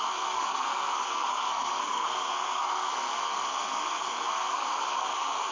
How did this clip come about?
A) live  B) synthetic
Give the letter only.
B